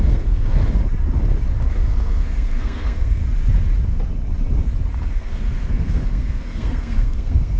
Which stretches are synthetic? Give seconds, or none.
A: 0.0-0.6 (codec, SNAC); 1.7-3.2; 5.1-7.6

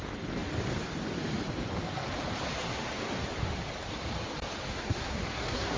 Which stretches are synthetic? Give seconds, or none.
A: 4.7-5.8 (codec, SNAC)

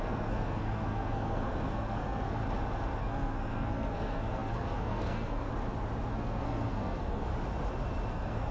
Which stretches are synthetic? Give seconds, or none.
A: 0.0-2.4 (codec, SNAC); 3.0-5.5; 6.1-7.3; 8.1-8.5

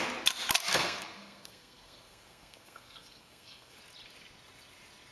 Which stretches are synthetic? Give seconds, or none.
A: 0.7-3.8 (codec, SNAC)

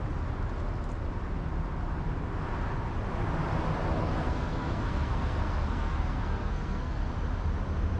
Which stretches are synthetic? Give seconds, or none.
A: 4.0-7.1 (codec, SNAC)